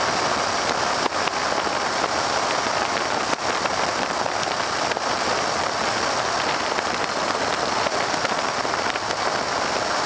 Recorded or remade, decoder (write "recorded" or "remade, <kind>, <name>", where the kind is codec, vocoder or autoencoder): recorded